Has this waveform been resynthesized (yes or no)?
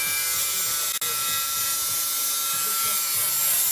no